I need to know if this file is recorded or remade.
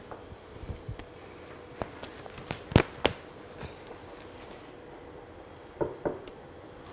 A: recorded